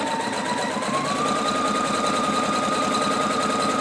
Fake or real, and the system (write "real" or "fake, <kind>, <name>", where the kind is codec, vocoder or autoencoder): real